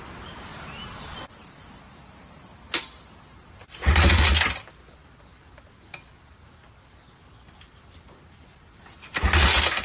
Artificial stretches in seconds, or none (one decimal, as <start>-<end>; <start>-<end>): none